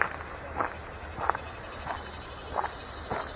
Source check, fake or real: real